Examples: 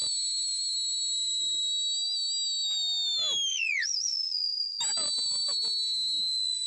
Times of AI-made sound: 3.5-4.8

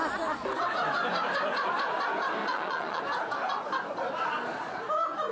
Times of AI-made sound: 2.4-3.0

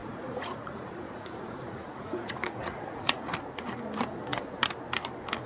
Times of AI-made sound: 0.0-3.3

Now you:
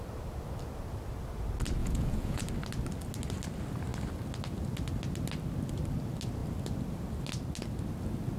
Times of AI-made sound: 1.8-2.4

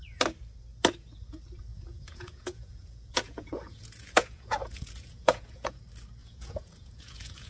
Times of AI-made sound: 1.7-5.8; 6.2-7.5

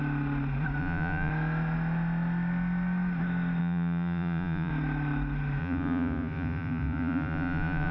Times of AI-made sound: 0.8-1.3; 3.6-4.7; 5.6-7.9

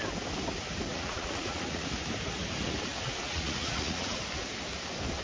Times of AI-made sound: 0.9-1.9; 2.9-4.2

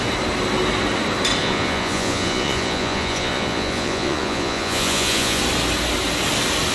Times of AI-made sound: 1.4-5.4